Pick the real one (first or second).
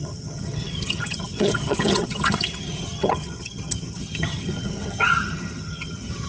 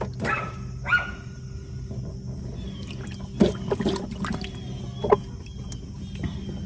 second